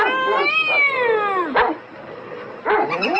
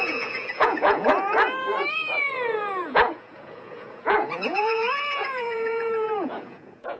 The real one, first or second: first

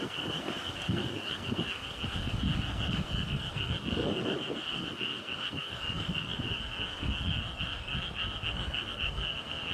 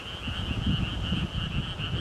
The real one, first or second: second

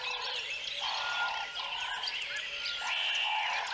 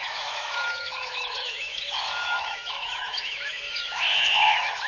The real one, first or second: first